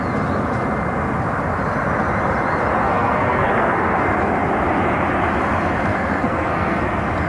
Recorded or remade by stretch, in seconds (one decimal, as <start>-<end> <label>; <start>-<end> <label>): 0.0-2.8 recorded; 2.8-4.0 remade; 4.0-5.9 recorded; 5.9-6.8 remade; 6.8-7.3 recorded

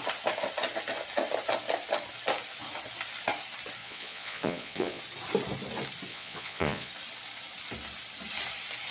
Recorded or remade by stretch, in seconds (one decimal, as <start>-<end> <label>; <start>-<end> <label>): 0.0-3.8 recorded; 3.8-5.0 remade; 5.0-6.1 recorded; 6.1-6.9 remade; 6.9-8.9 recorded

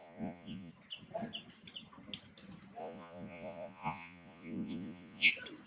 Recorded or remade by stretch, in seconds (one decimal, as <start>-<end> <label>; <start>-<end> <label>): 0.0-0.7 remade; 0.7-2.8 recorded; 2.8-5.3 remade; 5.3-5.7 recorded

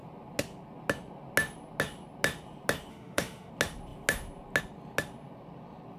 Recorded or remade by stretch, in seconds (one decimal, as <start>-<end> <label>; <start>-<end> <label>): 0.0-2.9 recorded; 2.9-3.5 remade; 3.5-6.0 recorded

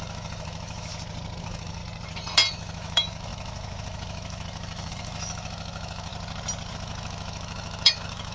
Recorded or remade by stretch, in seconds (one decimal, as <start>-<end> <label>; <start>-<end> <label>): 0.0-0.9 remade; 0.9-1.4 recorded; 1.4-1.8 remade; 1.8-2.5 recorded; 2.5-6.1 remade; 6.1-6.7 recorded; 6.7-8.3 remade

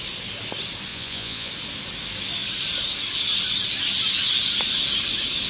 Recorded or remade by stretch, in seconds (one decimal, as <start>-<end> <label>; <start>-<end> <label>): 0.0-0.9 recorded; 0.9-1.5 remade; 1.5-5.5 recorded

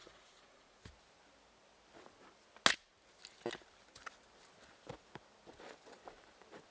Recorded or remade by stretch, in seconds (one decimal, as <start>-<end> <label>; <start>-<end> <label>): 0.0-0.8 remade; 0.8-6.7 recorded

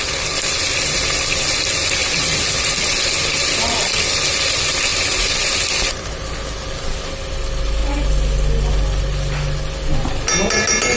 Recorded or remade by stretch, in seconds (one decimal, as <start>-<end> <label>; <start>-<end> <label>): 0.0-11.0 recorded